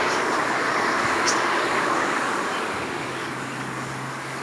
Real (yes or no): no